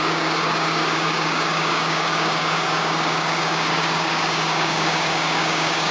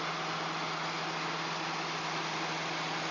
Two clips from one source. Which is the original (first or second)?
second